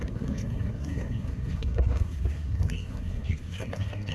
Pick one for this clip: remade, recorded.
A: remade